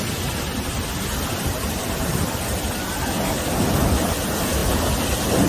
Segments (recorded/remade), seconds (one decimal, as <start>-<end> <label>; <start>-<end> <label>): 0.0-5.5 recorded